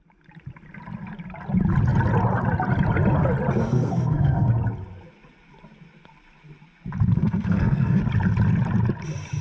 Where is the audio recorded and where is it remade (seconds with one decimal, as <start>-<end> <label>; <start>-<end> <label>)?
0.0-3.6 recorded; 3.6-4.5 remade; 4.5-7.1 recorded; 7.1-8.0 remade; 8.0-9.4 recorded